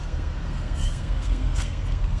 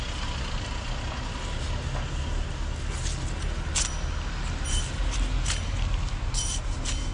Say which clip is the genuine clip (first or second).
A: second